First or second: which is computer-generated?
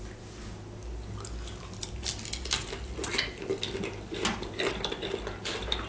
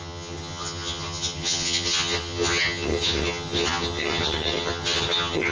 second